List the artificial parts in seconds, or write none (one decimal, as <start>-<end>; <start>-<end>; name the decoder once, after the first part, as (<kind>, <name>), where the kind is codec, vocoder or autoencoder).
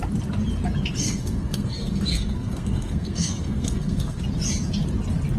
1.0-4.2 (codec, SNAC)